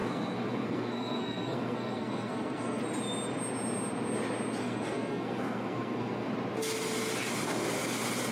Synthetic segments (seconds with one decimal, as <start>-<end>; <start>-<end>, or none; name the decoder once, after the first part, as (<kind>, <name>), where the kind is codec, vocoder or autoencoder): 0.0-2.8 (codec, SNAC); 4.6-6.3